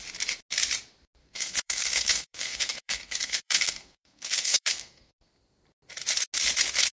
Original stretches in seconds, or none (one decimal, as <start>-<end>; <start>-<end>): 0.0-1.2; 5.3-6.9